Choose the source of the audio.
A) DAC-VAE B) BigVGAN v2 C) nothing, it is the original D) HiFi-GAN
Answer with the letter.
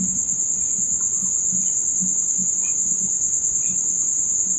C